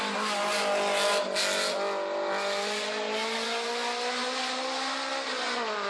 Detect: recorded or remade recorded